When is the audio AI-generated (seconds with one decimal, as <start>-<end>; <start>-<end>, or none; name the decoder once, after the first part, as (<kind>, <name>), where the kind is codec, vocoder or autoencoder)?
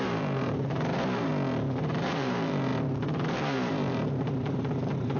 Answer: 0.0-1.3 (vocoder, BigVGAN v2); 1.8-5.2